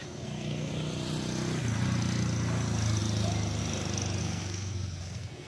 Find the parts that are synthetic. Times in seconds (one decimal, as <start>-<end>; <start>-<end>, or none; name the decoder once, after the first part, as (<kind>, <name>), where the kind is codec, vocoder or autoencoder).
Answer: 0.0-0.7 (codec, SNAC); 4.2-5.5